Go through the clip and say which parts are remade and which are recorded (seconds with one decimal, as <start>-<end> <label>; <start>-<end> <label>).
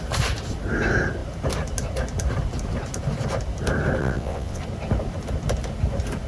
0.0-4.0 recorded; 4.0-4.6 remade; 4.6-6.3 recorded